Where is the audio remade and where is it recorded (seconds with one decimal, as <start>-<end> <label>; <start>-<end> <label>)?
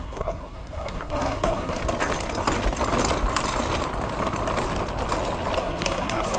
0.0-1.8 remade; 1.8-5.6 recorded; 5.6-6.4 remade